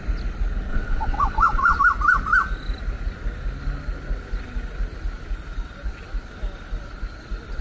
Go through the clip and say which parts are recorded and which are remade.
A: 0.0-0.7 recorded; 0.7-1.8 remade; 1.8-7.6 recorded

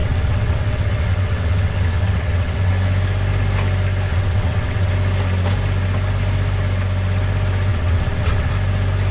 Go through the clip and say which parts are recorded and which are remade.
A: 0.0-2.7 remade; 2.7-4.1 recorded; 4.1-4.9 remade; 4.9-7.7 recorded; 7.7-8.5 remade; 8.5-9.1 recorded